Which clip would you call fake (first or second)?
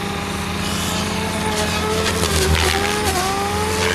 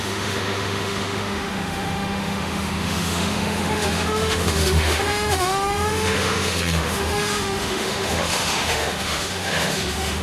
second